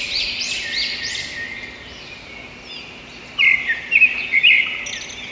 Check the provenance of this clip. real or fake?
real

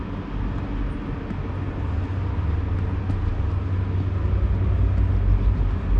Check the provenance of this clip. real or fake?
real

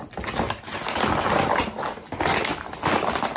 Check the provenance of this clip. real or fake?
real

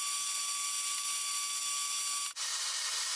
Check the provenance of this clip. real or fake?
real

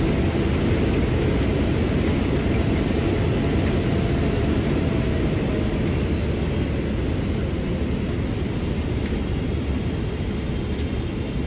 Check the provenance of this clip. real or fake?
real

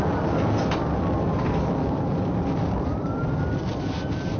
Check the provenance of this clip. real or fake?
real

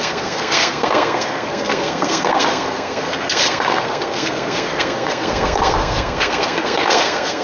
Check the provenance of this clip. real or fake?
fake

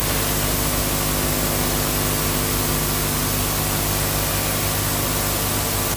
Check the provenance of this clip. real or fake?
real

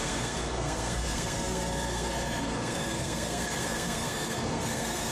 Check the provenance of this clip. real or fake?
fake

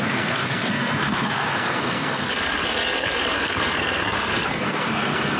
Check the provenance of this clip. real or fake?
fake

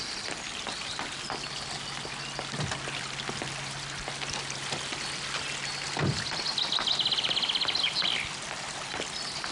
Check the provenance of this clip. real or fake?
real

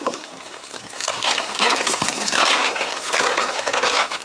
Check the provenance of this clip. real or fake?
fake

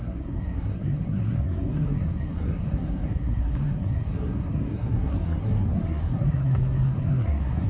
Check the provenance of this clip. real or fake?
fake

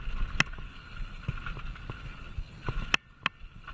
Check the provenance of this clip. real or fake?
real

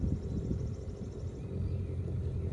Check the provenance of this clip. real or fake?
real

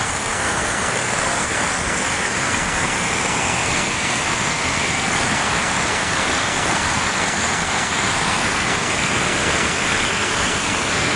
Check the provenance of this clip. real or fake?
fake